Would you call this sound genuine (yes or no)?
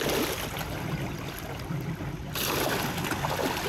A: yes